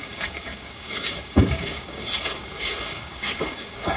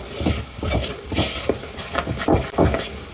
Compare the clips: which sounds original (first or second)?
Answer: second